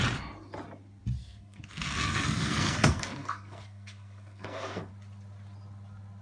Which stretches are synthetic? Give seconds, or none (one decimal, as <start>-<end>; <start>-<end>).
1.2-4.9